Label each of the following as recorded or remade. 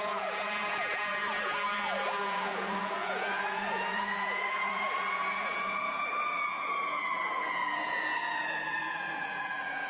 remade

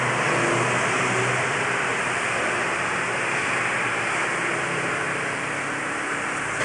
recorded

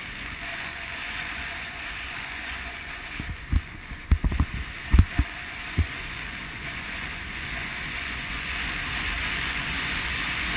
remade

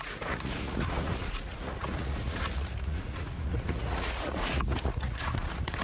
remade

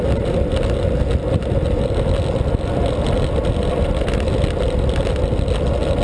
recorded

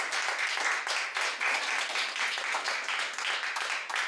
recorded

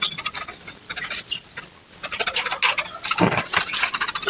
recorded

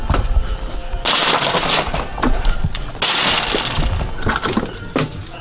recorded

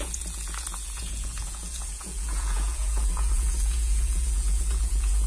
remade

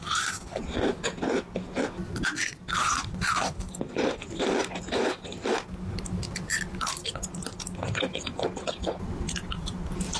recorded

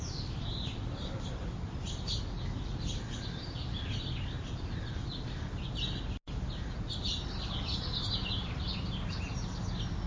recorded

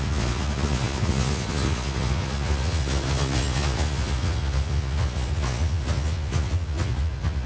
remade